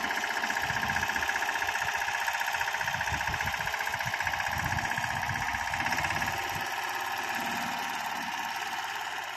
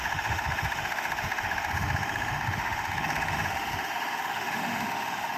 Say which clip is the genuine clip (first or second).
first